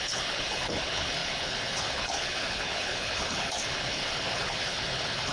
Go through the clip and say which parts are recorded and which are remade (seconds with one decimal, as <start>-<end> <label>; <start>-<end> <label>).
0.0-5.3 remade